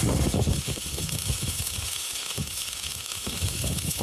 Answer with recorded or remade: remade